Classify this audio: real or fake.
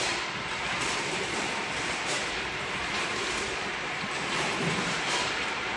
fake